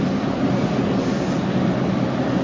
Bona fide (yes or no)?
yes